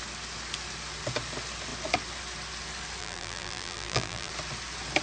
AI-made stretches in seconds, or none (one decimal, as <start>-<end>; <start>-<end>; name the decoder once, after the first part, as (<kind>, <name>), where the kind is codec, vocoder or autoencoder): 3.0-4.3 (vocoder, BigVGAN v2)